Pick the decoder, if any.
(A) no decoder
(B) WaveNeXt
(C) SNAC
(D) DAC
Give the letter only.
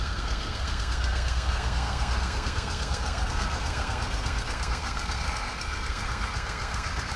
C